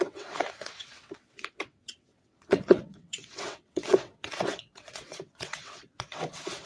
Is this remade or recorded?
remade